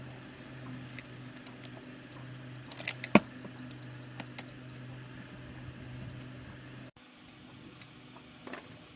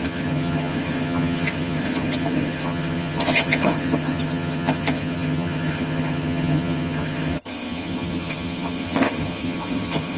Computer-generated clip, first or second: second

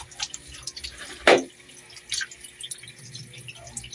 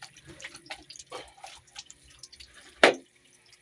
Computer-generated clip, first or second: second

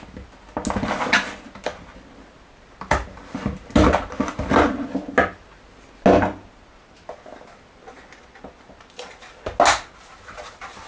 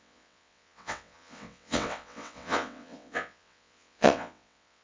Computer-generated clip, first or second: second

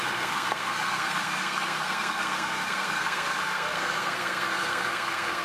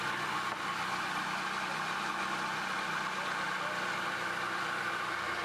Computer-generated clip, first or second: first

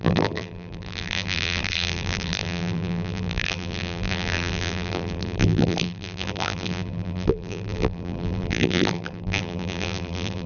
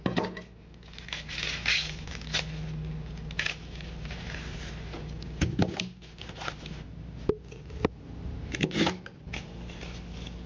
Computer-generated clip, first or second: first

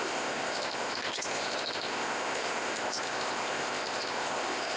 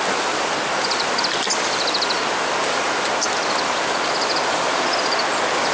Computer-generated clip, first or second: first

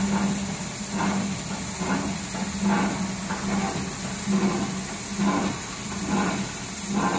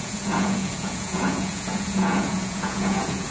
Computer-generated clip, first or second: second